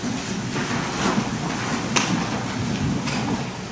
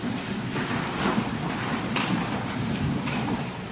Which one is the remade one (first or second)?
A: second